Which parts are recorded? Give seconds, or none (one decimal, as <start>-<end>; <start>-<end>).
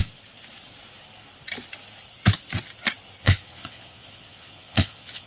0.0-3.2